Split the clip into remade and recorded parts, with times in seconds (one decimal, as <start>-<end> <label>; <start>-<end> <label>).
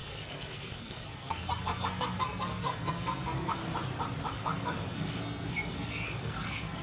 0.0-3.6 remade; 3.6-4.3 recorded; 4.3-6.8 remade